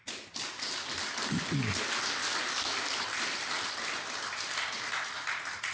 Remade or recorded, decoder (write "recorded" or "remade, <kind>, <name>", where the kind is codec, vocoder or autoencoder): recorded